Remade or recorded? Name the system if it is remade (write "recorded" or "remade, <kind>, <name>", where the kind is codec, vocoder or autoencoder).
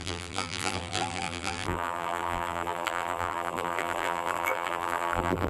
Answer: remade, vocoder, BigVGAN v2